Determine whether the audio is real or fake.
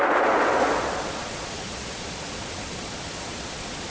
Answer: fake